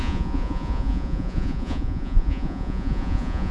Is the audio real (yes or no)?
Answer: no